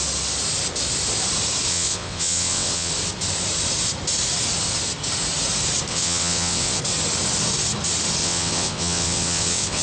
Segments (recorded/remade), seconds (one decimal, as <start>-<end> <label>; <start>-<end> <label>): 0.0-1.7 recorded; 1.7-2.9 remade; 2.9-5.9 recorded; 5.9-6.8 remade; 6.8-8.2 recorded; 8.2-9.8 remade